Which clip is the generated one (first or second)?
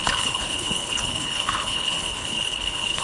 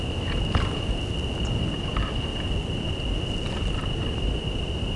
first